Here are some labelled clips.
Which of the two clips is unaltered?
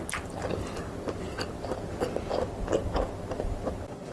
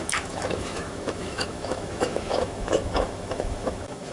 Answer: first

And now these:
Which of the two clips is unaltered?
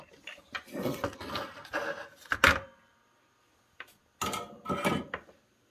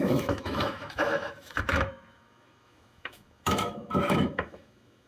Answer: first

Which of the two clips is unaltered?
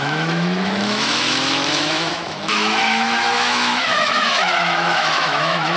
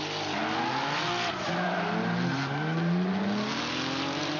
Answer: second